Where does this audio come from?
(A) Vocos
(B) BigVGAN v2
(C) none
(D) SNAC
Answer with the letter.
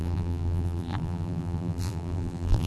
B